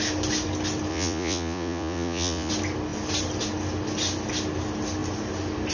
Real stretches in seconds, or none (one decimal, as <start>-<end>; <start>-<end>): 0.0-0.9; 2.5-5.7